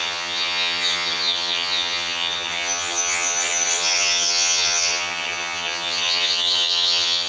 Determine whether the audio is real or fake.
fake